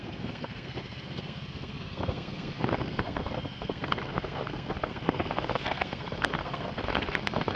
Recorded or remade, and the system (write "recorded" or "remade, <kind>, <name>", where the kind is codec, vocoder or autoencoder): remade, codec, SNAC